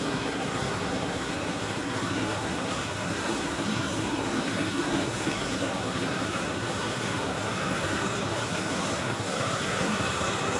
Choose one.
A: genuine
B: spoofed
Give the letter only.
B